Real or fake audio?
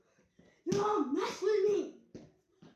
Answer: real